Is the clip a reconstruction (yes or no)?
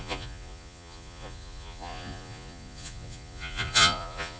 yes